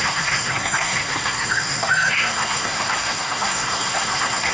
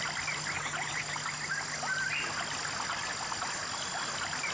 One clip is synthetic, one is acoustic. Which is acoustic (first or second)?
second